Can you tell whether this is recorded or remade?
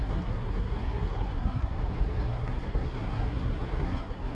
remade